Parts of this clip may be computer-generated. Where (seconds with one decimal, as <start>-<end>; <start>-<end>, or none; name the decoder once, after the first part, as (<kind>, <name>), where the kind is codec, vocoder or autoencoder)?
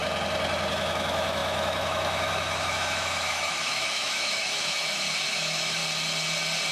0.7-5.8 (autoencoder, DAC-VAE)